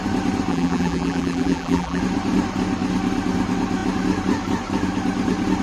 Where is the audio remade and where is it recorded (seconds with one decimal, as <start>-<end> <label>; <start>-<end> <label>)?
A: 0.0-0.5 recorded; 0.5-2.0 remade; 2.0-5.6 recorded